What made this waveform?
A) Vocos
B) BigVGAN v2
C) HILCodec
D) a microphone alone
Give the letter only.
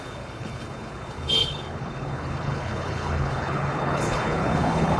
C